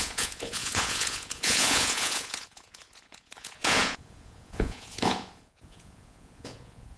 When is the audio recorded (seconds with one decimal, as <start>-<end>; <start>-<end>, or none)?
none